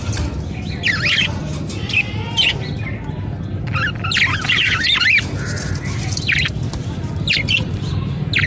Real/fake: real